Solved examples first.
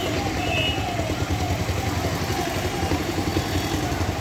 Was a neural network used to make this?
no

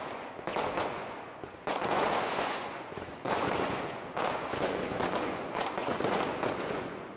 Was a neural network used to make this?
yes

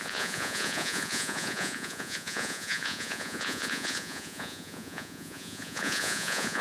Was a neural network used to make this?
yes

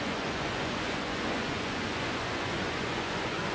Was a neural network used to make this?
yes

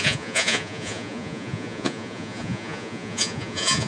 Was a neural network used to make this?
yes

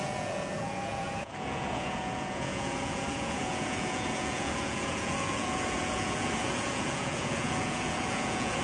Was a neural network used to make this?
yes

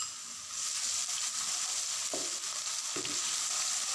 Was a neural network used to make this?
no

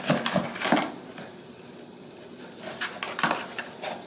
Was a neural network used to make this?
no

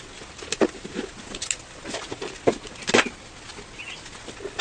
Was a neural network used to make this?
no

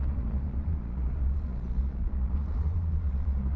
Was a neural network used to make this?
yes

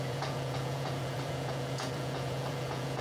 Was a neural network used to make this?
yes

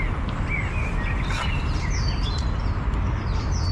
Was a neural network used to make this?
no